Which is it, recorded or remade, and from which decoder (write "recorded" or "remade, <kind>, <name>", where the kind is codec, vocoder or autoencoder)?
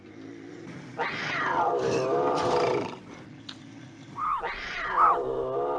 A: recorded